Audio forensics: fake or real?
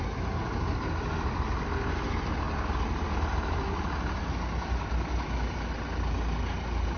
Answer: real